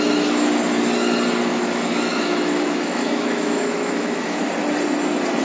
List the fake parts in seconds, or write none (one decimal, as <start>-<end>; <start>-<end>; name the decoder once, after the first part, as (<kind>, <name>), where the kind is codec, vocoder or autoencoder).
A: 1.5-4.5 (autoencoder, DAC-VAE)